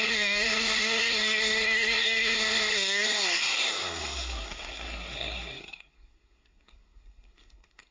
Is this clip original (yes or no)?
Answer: no